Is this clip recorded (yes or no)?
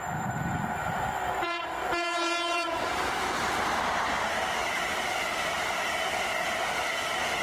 no